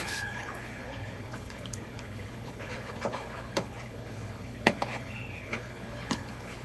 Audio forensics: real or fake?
fake